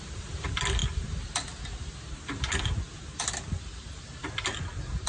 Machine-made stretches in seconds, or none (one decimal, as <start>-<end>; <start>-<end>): none